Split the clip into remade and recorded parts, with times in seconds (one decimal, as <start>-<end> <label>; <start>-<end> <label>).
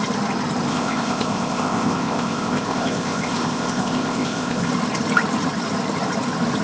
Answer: 0.0-0.7 recorded; 0.7-4.7 remade; 4.7-6.6 recorded